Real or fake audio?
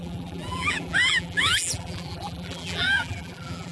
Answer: fake